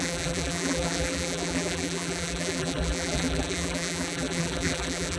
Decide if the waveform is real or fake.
fake